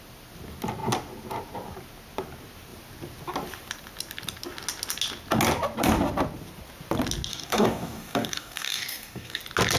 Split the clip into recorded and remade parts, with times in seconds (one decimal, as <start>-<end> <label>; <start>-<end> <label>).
0.0-7.3 recorded; 7.3-9.4 remade; 9.4-9.8 recorded